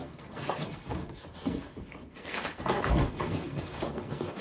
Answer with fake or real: fake